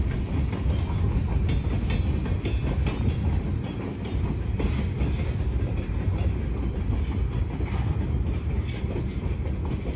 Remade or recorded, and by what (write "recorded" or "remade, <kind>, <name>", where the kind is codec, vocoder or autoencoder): recorded